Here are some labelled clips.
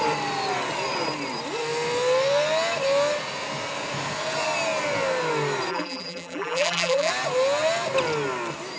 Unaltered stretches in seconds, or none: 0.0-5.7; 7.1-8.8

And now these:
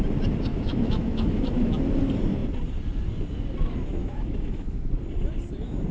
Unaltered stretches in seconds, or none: 0.0-0.5; 1.7-4.0; 4.9-5.9

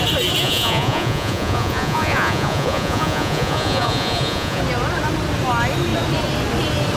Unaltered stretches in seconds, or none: 0.0-0.4; 4.6-7.0